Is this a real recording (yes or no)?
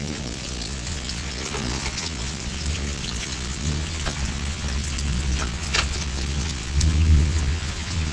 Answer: no